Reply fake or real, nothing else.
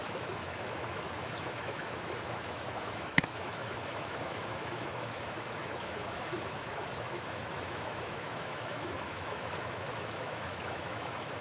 fake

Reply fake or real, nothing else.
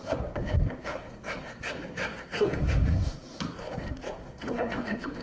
fake